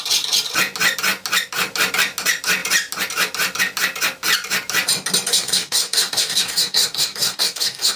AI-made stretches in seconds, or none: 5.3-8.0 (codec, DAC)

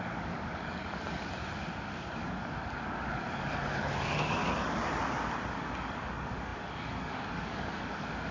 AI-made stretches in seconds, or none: 0.0-1.3 (codec, DAC); 1.9-4.4; 5.5-8.3

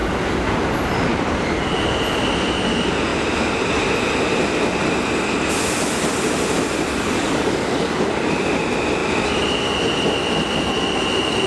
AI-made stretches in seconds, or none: 6.9-8.0 (codec, DAC)

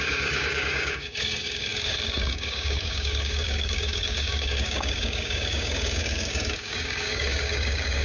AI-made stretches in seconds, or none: 0.0-8.0 (codec, DAC)

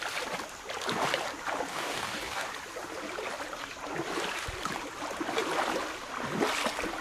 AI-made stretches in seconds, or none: 1.7-2.5 (codec, DAC)

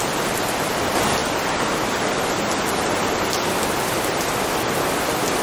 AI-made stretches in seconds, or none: none

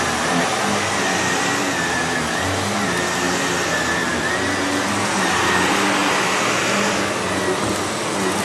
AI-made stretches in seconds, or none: none

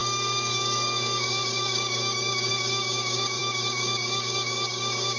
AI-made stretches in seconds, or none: 0.0-5.2 (codec, DAC)